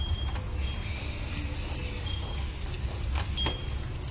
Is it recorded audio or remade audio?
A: recorded